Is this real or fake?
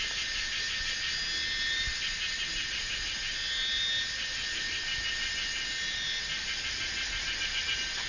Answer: real